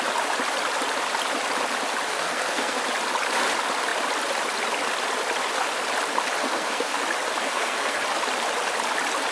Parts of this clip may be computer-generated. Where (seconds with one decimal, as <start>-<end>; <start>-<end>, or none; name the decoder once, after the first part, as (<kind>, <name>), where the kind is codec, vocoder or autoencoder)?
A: 2.1-2.8 (codec, SNAC); 6.4-7.0; 7.4-8.0